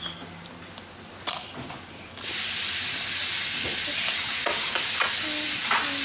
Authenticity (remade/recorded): recorded